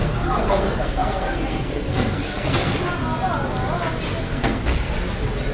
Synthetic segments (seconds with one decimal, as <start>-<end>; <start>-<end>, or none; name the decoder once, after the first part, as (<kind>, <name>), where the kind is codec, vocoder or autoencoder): 0.0-2.8 (codec, SNAC); 4.2-4.9